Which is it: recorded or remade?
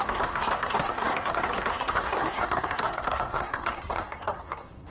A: remade